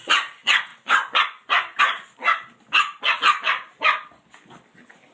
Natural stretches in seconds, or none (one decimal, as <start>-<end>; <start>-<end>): 2.2-5.1